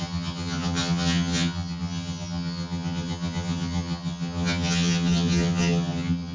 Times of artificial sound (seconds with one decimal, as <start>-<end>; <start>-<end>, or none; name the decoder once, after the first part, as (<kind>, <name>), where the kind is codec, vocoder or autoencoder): 0.0-6.3 (vocoder, HiFi-GAN)